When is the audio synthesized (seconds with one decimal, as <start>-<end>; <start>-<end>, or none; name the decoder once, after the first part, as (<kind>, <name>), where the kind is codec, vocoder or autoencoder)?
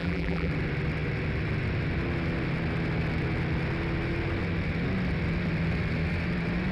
0.0-0.5 (vocoder, BigVGAN v2)